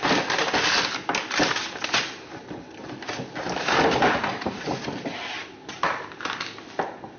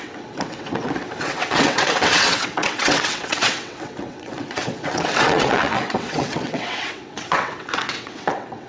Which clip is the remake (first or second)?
second